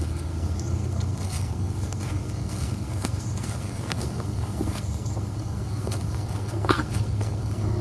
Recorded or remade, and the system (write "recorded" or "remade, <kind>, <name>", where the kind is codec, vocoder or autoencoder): remade, codec, SNAC